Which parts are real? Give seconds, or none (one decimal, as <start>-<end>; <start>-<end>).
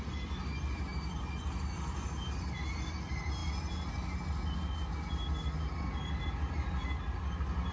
0.0-7.7